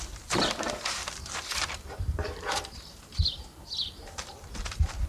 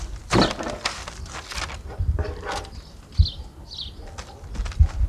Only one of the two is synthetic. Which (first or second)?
first